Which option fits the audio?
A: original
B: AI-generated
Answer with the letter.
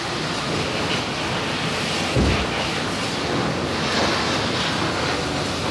A